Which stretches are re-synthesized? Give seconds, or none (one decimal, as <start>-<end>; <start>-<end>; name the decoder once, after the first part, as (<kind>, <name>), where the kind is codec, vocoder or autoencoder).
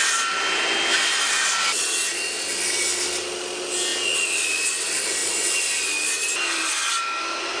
none